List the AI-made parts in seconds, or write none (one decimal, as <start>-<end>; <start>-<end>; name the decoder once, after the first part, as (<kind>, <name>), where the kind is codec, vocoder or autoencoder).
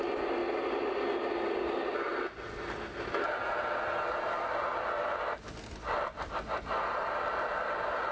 none